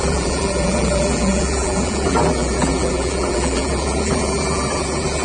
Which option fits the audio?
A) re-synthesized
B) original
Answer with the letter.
A